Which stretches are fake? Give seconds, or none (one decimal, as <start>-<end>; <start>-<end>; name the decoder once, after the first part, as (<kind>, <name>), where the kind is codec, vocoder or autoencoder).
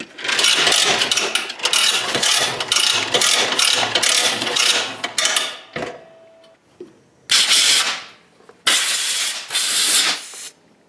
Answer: 1.8-2.6 (vocoder, WaveNeXt); 4.2-4.7